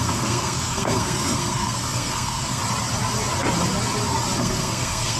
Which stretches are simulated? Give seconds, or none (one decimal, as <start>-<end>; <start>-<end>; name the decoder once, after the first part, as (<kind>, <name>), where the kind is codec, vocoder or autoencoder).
0.0-2.6 (codec, SNAC); 4.4-5.2